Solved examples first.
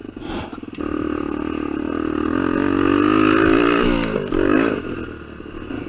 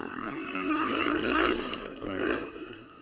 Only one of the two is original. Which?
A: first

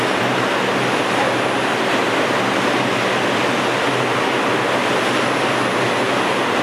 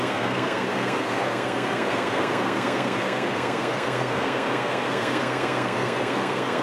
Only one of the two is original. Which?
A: first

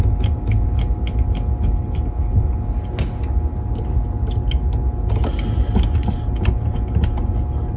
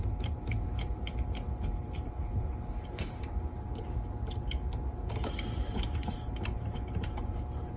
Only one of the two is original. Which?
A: first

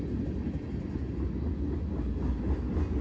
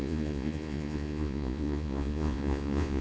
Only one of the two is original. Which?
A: first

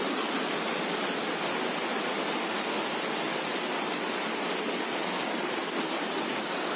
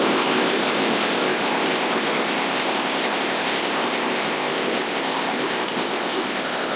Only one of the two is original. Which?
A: first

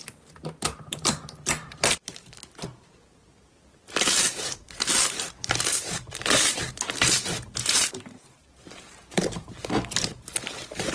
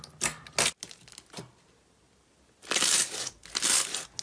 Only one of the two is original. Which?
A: second